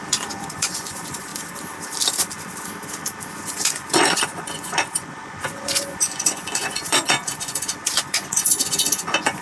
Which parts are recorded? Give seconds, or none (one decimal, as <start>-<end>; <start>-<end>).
1.3-3.3